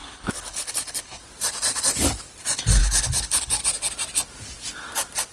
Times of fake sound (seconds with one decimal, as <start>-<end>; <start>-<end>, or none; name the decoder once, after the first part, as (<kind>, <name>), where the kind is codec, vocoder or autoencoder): 0.0-1.2 (codec, HILCodec); 2.8-3.6